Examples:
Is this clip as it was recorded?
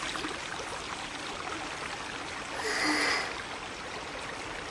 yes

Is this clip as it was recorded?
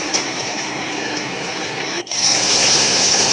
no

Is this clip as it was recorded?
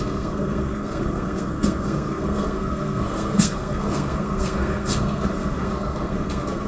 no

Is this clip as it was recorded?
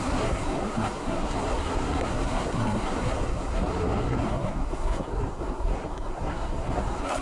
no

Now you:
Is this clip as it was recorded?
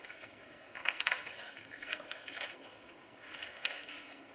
no